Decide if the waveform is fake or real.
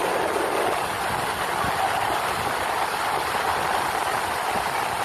real